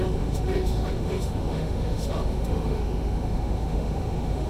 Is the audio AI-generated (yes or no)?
yes